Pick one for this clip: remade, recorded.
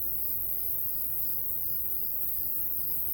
recorded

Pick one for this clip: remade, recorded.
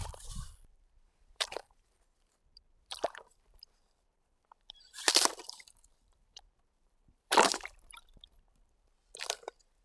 remade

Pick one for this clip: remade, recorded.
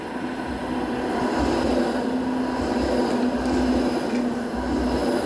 recorded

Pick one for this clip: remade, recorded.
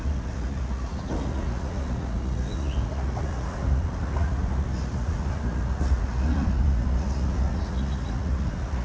remade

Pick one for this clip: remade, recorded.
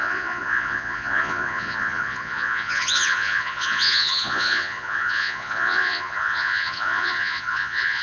remade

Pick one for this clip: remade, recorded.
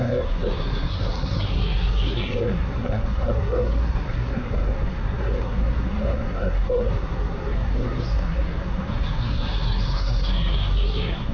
remade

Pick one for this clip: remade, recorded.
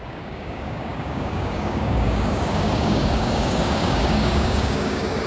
remade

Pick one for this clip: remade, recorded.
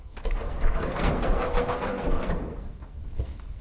remade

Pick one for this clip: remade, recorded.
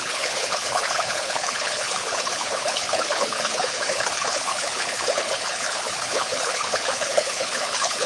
remade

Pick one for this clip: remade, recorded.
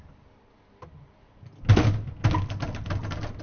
recorded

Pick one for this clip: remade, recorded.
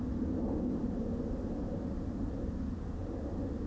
recorded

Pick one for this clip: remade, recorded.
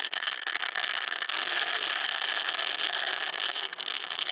remade